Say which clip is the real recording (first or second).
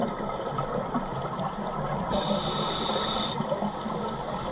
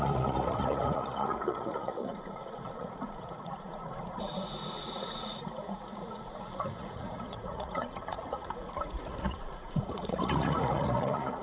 first